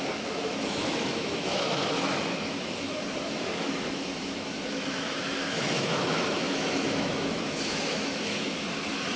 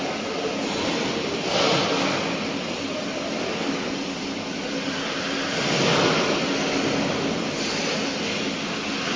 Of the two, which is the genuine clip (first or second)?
second